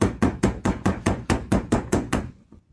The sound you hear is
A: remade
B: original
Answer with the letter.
A